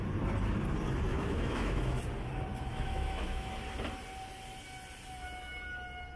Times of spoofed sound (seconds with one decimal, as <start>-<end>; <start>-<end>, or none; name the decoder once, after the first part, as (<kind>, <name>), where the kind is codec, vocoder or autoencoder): 1.1-2.0 (autoencoder, DAC-VAE); 2.7-3.5